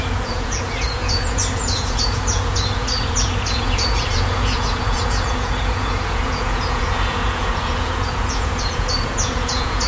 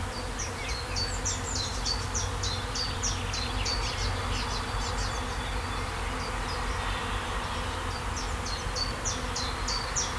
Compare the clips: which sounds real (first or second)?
second